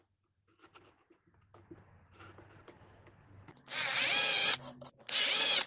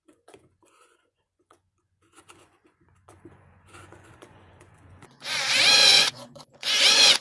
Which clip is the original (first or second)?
first